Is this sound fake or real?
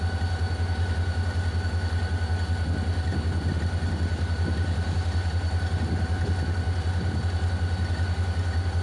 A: real